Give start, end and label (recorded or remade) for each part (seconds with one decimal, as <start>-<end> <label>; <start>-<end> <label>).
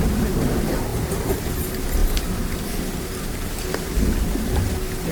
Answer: 0.0-0.9 recorded; 0.9-1.5 remade; 1.5-2.0 recorded; 2.0-2.8 remade; 2.8-5.1 recorded